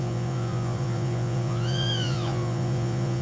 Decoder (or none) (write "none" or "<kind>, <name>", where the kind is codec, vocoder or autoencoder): vocoder, Vocos